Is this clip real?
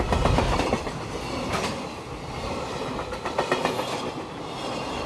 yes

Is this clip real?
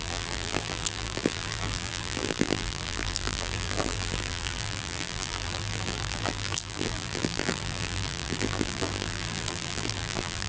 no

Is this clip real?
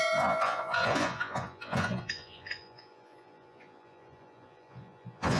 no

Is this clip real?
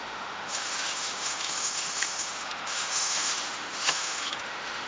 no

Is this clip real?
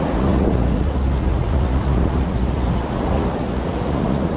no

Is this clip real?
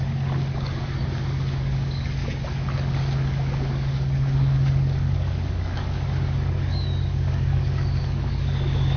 no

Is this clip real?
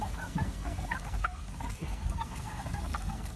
no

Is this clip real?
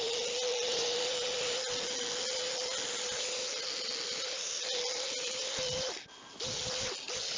yes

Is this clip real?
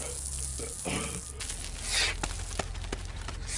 yes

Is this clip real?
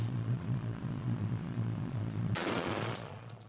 no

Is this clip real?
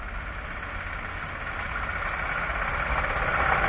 yes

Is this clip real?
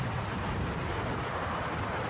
yes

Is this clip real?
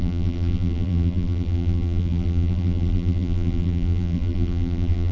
no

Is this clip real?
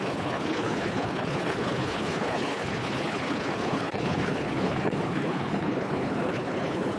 no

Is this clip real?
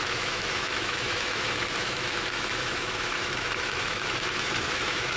no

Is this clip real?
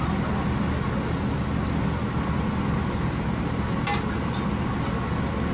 yes